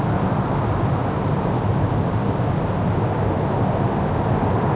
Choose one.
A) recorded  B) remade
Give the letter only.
A